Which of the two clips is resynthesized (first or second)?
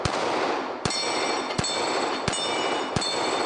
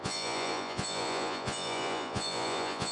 second